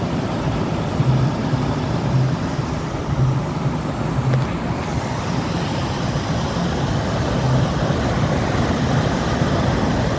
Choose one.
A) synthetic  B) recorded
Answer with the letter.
B